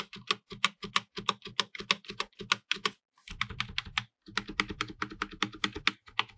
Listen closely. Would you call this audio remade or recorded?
recorded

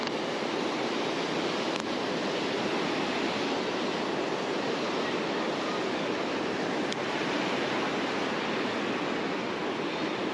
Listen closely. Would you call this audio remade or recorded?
recorded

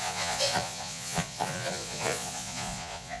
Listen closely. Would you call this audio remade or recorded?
remade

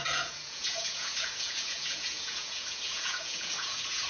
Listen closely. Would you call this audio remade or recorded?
remade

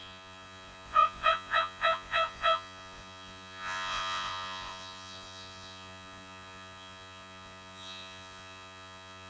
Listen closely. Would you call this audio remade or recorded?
remade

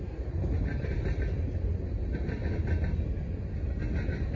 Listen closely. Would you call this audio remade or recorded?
recorded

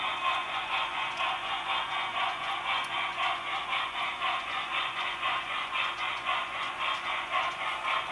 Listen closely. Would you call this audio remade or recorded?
remade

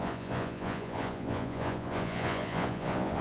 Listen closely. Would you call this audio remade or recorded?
remade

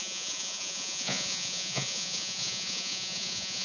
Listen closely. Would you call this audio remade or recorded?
remade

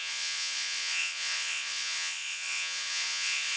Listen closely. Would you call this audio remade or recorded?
remade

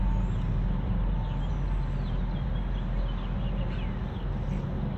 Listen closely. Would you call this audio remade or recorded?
recorded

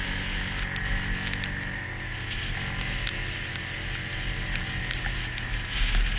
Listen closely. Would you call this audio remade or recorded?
recorded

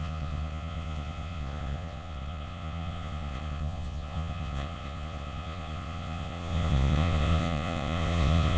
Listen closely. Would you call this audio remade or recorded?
remade